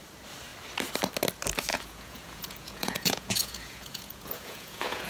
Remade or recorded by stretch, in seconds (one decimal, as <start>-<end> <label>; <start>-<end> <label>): 0.0-1.7 recorded; 1.7-5.1 remade